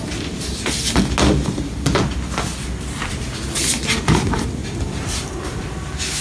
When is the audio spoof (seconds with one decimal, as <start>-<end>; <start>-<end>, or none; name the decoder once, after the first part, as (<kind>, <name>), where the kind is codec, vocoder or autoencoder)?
4.6-5.4 (vocoder, BigVGAN v2)